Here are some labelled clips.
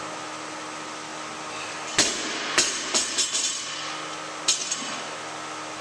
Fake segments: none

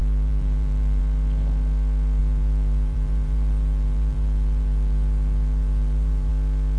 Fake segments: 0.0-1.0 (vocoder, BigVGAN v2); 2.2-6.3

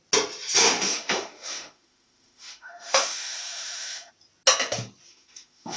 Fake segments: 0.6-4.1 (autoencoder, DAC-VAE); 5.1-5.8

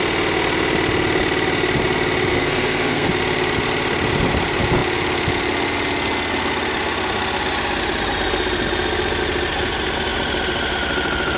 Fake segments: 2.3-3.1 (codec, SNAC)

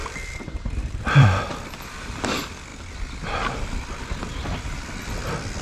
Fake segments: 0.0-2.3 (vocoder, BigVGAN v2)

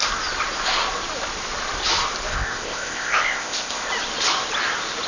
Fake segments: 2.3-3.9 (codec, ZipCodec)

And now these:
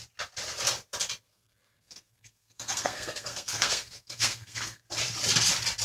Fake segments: 1.3-4.8 (codec, SNAC)

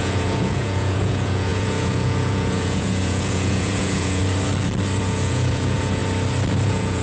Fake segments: 0.0-4.2 (vocoder, Vocos); 5.0-6.0; 6.5-7.0